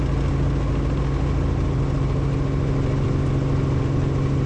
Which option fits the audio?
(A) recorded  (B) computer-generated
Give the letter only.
A